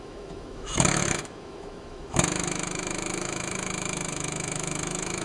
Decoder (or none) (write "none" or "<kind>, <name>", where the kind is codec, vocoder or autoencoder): autoencoder, DAC-VAE